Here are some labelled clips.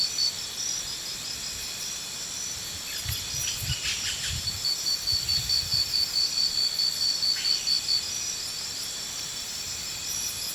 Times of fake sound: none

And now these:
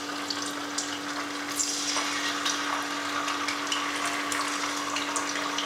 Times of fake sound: none

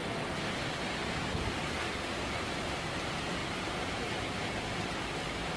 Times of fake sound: none

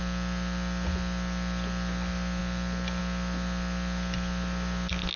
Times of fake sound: none

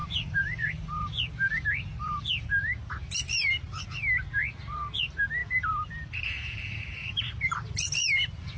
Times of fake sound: 0.0-0.7 (vocoder, BigVGAN v2); 3.0-3.7; 5.4-7.3

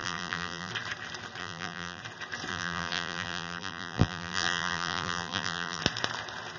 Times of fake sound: 0.0-0.7 (vocoder, BigVGAN v2); 1.4-2.0; 2.5-5.8